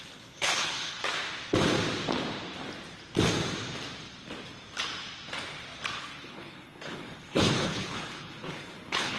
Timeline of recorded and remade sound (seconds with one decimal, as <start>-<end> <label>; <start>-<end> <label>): 0.0-1.0 remade; 1.0-6.0 recorded; 6.0-9.2 remade

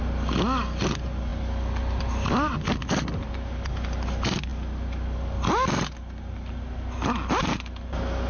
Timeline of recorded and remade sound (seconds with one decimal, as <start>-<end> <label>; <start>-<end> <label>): 0.0-8.3 recorded

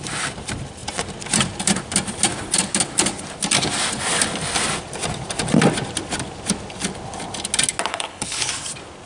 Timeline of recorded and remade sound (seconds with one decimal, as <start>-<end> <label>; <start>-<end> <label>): 0.0-7.9 recorded; 7.9-8.5 remade; 8.5-9.1 recorded

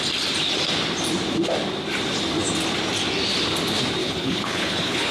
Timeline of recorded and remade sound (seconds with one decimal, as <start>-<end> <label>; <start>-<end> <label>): 0.0-4.0 recorded; 4.0-5.1 remade

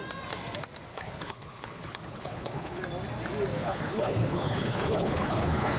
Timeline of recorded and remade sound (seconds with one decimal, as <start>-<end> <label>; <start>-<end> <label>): 0.0-0.9 recorded; 0.9-2.8 remade; 2.8-3.5 recorded; 3.5-5.8 remade